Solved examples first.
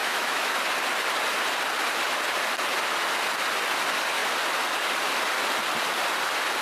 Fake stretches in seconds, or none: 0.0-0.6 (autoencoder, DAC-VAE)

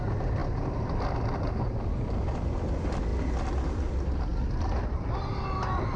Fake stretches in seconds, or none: none